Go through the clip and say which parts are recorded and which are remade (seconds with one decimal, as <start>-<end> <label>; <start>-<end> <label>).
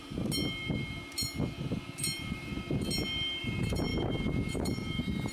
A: 0.0-2.0 recorded; 2.0-2.5 remade; 2.5-3.4 recorded; 3.4-5.3 remade